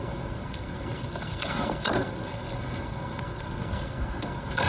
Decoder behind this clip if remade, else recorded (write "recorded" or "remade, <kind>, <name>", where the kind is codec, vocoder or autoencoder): remade, codec, SNAC